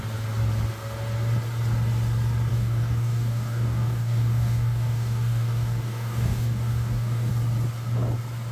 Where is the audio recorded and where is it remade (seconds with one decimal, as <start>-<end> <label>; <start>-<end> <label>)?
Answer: 0.0-2.5 recorded; 2.5-7.3 remade; 7.3-8.5 recorded